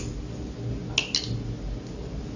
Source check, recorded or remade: recorded